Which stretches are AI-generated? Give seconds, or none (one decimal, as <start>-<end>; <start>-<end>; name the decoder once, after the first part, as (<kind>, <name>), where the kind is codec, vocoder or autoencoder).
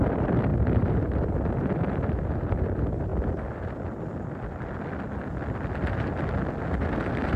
none